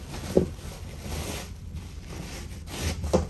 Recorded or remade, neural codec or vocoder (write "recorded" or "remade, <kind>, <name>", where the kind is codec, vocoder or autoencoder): recorded